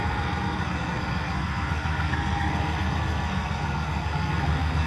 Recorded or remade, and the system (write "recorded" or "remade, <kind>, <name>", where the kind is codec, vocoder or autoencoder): remade, codec, SNAC